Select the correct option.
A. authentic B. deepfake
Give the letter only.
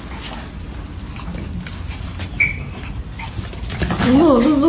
A